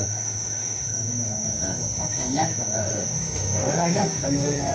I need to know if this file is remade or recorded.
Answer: remade